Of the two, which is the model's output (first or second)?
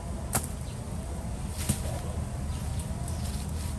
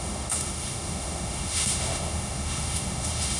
second